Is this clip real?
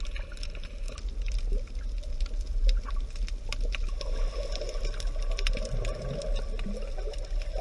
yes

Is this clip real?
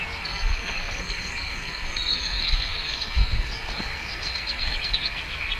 no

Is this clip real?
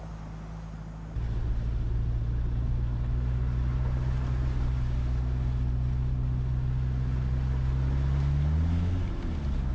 yes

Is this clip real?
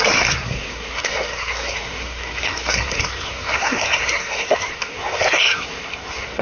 no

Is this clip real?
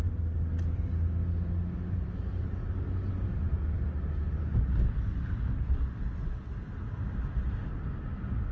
yes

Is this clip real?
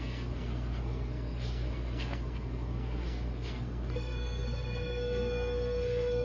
no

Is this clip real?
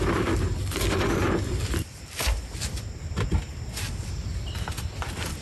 yes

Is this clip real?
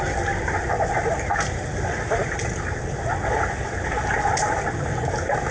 yes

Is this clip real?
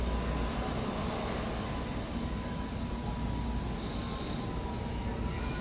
yes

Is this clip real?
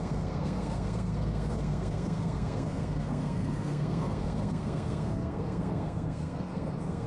no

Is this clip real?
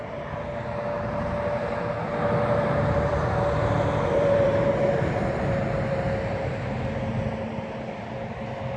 no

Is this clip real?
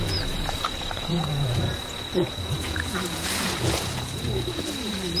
no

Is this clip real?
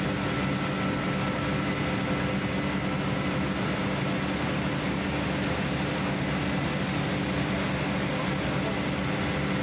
yes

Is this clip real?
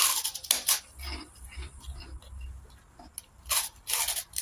yes